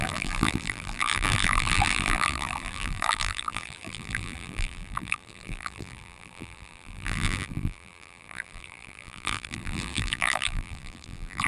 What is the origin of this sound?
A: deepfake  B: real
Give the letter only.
A